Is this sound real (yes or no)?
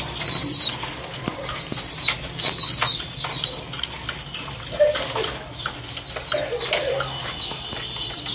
yes